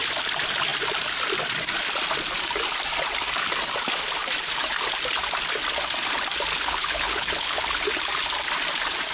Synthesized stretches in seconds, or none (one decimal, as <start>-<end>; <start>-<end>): 6.5-7.8